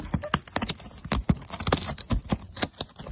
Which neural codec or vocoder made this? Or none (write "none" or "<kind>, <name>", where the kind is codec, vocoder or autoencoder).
none